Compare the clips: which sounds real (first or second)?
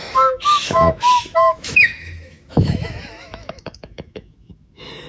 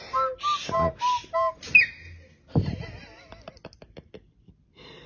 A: second